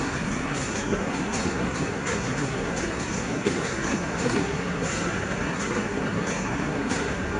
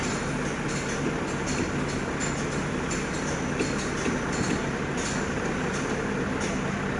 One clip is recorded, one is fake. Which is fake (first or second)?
first